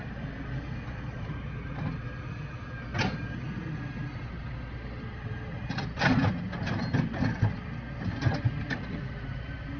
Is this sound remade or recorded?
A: recorded